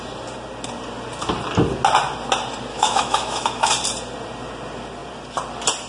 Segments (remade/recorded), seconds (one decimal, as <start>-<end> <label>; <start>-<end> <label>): 0.0-2.7 recorded; 2.7-3.7 remade; 3.7-5.9 recorded